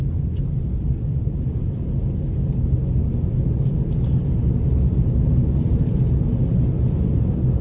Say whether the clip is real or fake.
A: real